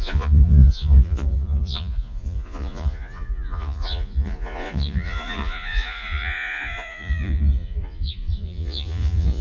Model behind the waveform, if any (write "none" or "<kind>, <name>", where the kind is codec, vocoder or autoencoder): vocoder, Vocos